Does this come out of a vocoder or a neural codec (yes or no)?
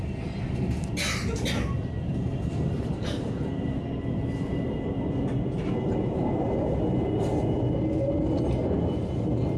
no